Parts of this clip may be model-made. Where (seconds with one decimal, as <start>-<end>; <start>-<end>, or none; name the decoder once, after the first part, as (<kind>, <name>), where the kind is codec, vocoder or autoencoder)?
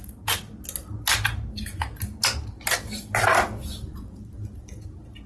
3.6-4.7 (vocoder, BigVGAN v2)